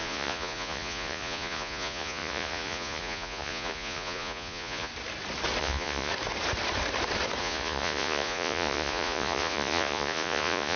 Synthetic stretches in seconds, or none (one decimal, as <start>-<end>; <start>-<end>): 0.0-4.9; 5.6-6.1; 7.4-10.8